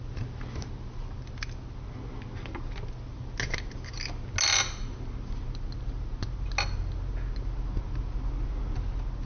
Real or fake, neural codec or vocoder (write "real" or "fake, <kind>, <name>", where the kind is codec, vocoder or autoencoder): real